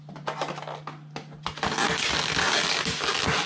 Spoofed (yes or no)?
no